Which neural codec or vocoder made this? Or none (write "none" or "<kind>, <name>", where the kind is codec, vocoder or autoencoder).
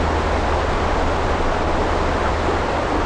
none